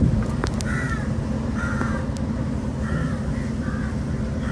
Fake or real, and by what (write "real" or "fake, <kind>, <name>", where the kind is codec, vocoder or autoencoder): real